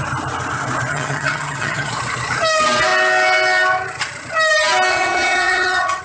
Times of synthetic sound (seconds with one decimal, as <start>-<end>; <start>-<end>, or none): 0.9-1.9; 4.9-6.0